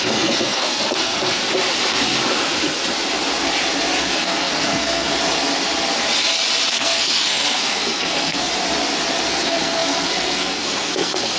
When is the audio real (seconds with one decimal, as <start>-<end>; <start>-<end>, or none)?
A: 1.4-4.0; 5.1-6.7; 8.5-9.3